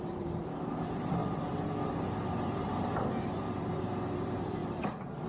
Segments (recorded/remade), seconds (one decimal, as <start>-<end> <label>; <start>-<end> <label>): 0.0-1.2 remade; 1.2-2.3 recorded; 2.3-5.3 remade